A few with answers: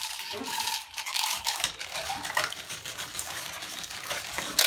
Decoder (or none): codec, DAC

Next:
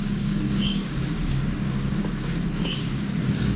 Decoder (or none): codec, DAC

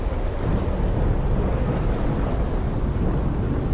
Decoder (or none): none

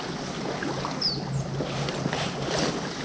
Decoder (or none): none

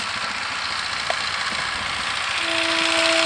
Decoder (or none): none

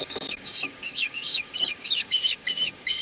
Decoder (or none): codec, DAC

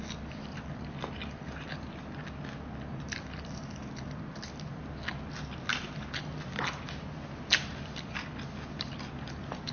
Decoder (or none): none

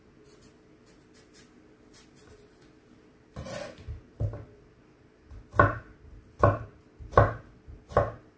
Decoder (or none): none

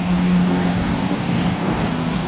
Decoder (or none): codec, DAC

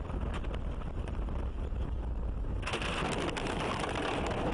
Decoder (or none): none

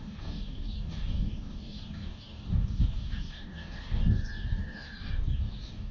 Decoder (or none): codec, DAC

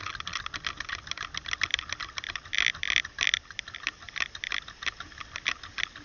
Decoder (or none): none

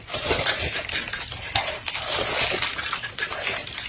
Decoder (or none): none